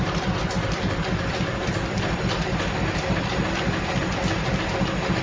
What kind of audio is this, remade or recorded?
recorded